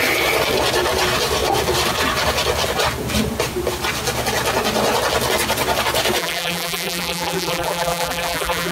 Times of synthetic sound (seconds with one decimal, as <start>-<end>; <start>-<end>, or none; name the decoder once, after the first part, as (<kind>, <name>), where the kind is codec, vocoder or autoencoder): 6.2-8.7 (vocoder, BigVGAN v2)